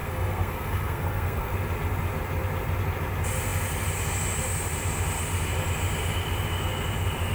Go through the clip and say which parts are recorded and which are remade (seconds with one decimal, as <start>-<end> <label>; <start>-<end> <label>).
0.0-1.5 remade; 1.5-7.3 recorded